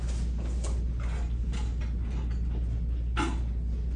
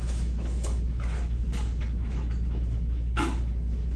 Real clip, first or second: first